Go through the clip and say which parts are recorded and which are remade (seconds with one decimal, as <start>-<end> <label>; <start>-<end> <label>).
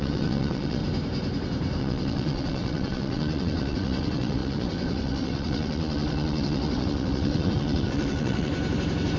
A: 0.0-0.8 remade; 0.8-1.8 recorded; 1.8-8.5 remade; 8.5-9.2 recorded